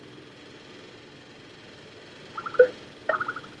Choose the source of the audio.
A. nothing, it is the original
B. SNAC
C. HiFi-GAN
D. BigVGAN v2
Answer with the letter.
A